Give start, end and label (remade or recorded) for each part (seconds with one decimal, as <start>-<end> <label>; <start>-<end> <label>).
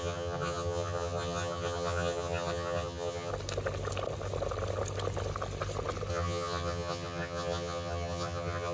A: 0.0-3.3 remade; 3.3-6.1 recorded; 6.1-8.7 remade